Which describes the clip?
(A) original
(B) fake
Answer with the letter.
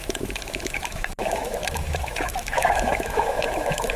B